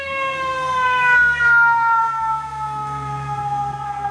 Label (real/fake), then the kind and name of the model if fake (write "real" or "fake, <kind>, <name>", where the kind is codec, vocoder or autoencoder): fake, codec, SNAC